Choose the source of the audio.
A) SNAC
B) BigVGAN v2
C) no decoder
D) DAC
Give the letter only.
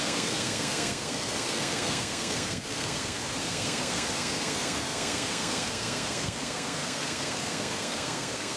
A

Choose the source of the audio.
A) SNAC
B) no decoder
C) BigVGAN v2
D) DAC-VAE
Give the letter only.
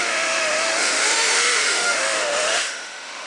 D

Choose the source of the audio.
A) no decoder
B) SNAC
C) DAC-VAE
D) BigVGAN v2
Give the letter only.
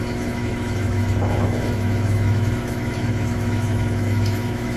C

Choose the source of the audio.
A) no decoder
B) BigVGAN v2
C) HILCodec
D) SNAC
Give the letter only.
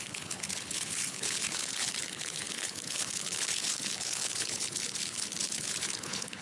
C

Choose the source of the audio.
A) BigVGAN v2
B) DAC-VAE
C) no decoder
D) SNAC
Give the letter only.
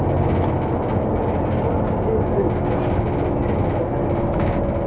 C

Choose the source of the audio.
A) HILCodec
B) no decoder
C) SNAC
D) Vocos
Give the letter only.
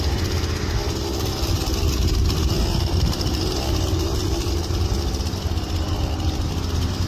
B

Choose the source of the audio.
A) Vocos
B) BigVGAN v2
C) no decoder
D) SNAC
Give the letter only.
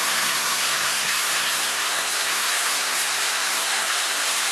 D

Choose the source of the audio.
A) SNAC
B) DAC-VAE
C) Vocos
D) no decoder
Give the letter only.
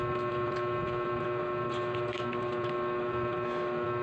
D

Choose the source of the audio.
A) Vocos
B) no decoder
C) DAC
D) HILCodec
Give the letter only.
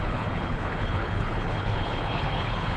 D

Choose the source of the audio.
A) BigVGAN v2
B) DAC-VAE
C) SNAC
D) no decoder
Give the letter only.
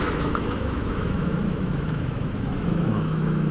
B